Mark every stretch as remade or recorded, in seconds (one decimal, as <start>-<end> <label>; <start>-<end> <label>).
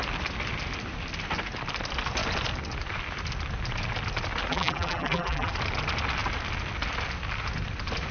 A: 0.0-4.5 recorded; 4.5-5.5 remade; 5.5-8.1 recorded